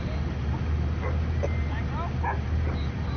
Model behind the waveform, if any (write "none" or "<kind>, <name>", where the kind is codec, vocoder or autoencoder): none